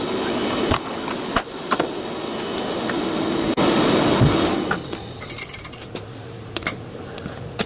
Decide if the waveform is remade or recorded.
recorded